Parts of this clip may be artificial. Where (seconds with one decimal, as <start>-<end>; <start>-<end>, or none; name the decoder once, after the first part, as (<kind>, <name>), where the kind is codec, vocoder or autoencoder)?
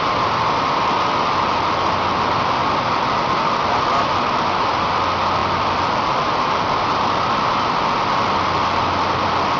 none